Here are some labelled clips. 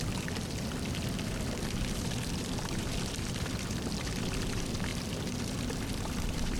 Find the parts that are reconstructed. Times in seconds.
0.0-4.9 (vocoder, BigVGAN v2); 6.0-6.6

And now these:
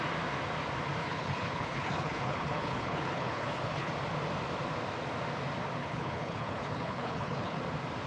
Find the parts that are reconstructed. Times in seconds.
1.0-3.9 (codec, HILCodec); 5.8-7.6

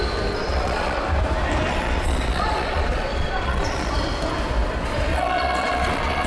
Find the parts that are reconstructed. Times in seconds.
0.4-1.0 (vocoder, Vocos); 1.7-3.9; 5.1-6.3